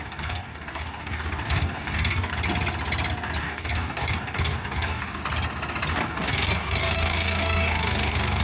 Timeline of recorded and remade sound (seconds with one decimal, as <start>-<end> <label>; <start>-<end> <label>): 0.0-2.3 remade; 2.3-3.4 recorded; 3.4-5.2 remade; 5.2-5.9 recorded; 5.9-8.4 remade